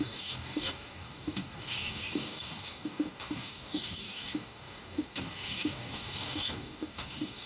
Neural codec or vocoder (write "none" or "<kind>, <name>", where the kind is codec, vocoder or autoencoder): codec, DAC